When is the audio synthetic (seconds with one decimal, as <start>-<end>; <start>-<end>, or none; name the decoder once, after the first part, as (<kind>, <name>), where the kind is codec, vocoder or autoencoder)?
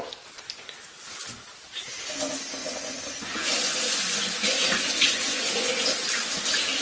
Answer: 2.6-6.0 (vocoder, Vocos)